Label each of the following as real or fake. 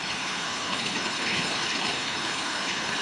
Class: fake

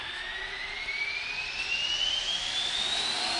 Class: real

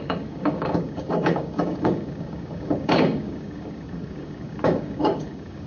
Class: fake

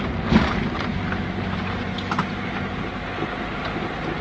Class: real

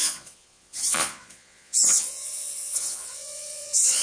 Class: fake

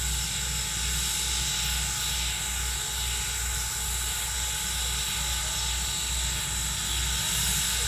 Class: real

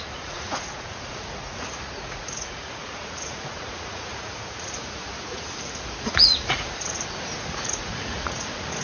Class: fake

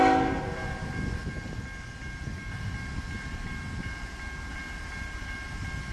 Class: real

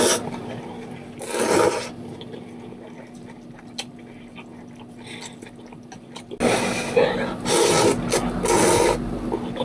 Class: real